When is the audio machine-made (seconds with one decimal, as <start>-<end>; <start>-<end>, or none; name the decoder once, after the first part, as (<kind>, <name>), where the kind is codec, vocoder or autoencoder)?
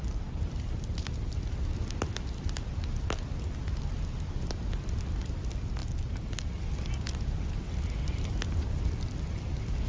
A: none